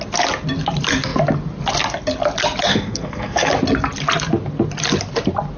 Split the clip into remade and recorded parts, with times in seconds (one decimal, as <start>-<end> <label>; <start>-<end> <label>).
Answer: 0.0-2.7 recorded; 2.7-3.5 remade; 3.5-5.6 recorded